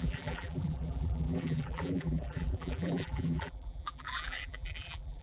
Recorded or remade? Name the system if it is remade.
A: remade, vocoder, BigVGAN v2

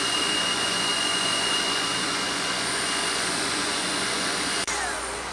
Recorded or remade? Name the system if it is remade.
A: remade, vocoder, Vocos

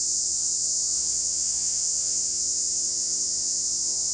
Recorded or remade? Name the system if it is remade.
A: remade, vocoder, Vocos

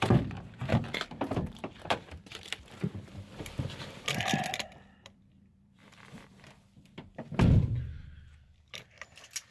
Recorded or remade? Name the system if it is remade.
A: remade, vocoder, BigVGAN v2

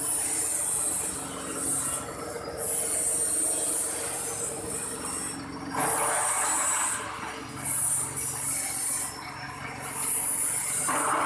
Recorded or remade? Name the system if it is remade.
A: recorded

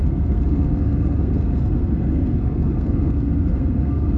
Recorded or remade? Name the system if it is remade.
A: remade, codec, SNAC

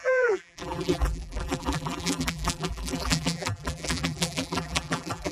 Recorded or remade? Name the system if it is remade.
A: remade, vocoder, BigVGAN v2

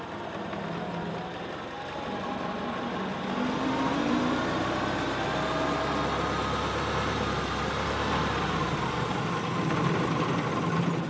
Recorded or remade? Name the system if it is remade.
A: recorded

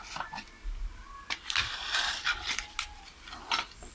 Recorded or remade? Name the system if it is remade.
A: recorded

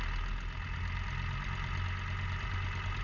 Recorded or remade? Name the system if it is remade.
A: recorded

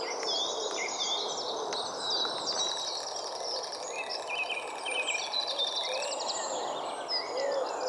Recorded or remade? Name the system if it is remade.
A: recorded